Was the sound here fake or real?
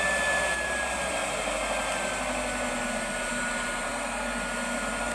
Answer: real